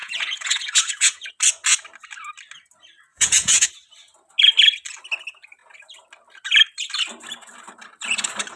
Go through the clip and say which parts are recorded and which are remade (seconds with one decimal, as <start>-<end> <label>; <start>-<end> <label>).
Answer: 0.0-1.3 remade; 1.3-3.1 recorded; 3.1-3.7 remade; 3.7-8.6 recorded

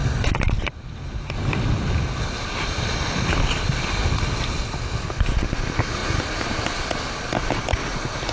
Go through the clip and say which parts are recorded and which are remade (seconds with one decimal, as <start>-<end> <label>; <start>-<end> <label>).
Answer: 0.0-8.3 recorded

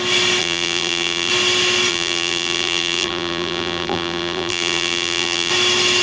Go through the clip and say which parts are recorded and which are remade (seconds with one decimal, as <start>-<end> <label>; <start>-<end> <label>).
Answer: 0.0-0.4 recorded; 0.4-1.3 remade; 1.3-1.9 recorded; 1.9-5.5 remade; 5.5-6.0 recorded